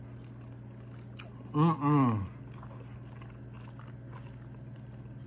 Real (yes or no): yes